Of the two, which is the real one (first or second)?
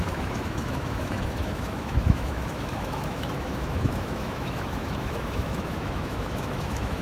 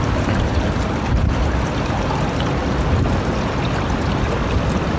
second